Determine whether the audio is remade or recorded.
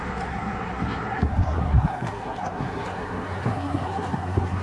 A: remade